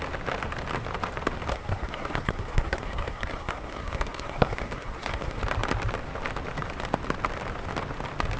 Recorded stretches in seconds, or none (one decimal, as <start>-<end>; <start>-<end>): 0.0-1.5; 5.4-8.4